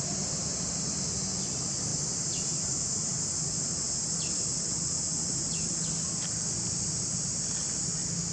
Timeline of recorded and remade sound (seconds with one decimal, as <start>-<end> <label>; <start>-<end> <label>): 0.0-8.3 recorded

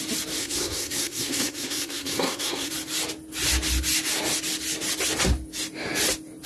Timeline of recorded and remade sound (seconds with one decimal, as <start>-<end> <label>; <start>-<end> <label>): 0.0-0.4 recorded; 0.4-2.7 remade; 2.7-6.5 recorded

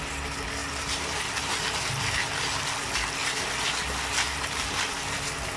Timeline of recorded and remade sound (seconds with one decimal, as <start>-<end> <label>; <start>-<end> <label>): 0.0-5.6 recorded

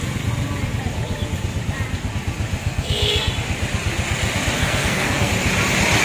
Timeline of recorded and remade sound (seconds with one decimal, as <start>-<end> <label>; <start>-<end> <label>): 0.0-2.6 recorded; 2.6-3.3 remade; 3.3-4.6 recorded; 4.6-5.3 remade; 5.3-6.0 recorded

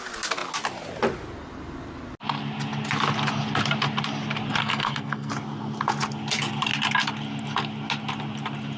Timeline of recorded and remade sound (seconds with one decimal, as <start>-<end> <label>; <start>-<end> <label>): 0.0-4.6 recorded; 4.6-5.3 remade; 5.3-8.8 recorded

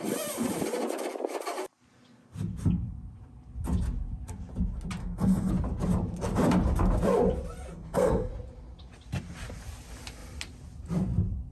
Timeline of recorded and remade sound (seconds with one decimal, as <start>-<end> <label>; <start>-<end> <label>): 0.0-5.0 recorded; 5.0-5.5 remade; 5.5-7.7 recorded; 7.7-8.3 remade; 8.3-11.5 recorded

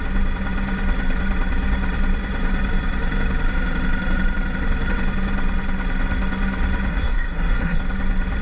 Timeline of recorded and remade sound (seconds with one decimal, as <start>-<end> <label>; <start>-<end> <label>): 0.0-6.9 recorded; 6.9-7.8 remade; 7.8-8.4 recorded